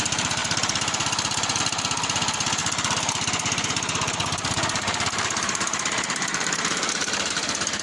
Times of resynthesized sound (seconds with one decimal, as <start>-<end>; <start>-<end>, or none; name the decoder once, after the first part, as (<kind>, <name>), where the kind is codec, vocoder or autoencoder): 0.0-7.8 (vocoder, BigVGAN v2)